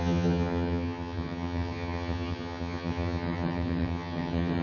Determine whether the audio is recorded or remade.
remade